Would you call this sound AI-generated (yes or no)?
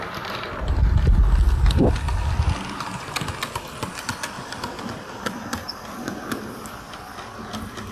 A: no